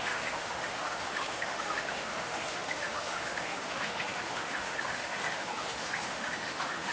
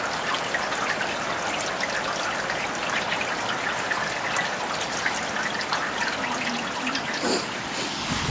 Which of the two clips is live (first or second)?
second